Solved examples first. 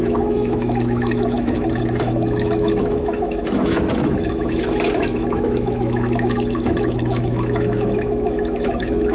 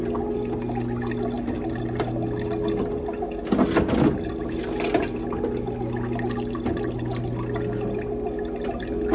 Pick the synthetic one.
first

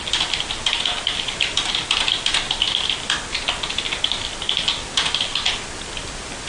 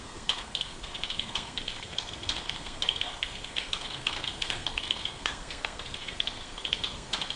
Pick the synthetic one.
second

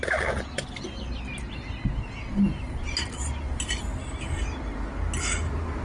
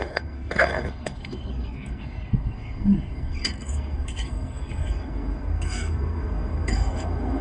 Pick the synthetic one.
second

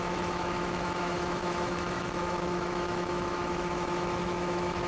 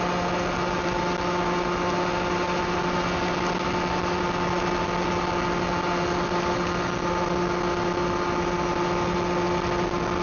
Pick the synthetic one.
first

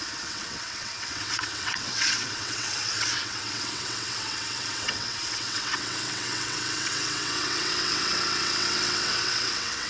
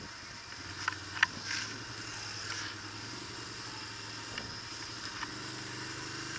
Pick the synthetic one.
first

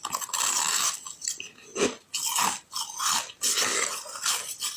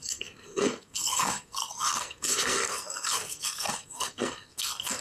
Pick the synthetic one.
second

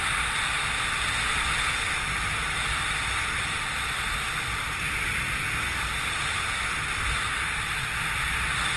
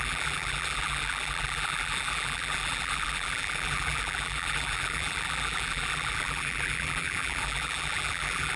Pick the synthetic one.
second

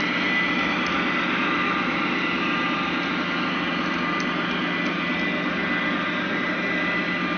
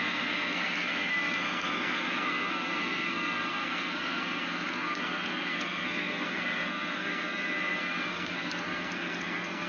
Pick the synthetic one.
second